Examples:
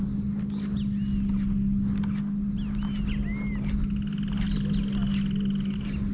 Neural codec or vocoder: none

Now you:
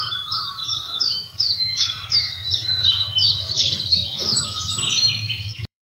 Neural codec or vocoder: codec, DAC